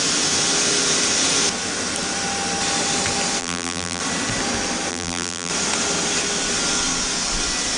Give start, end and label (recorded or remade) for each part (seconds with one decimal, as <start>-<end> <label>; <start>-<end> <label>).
0.0-3.4 recorded; 3.4-4.0 remade; 4.0-4.9 recorded; 4.9-5.5 remade; 5.5-7.8 recorded